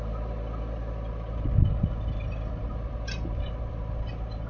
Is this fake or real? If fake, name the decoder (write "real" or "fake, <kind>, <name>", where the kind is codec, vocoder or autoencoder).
real